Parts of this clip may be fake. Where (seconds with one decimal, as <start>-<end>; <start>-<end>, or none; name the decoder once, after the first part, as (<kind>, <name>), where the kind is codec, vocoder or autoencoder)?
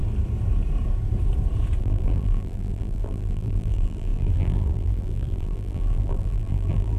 1.8-7.0 (vocoder, BigVGAN v2)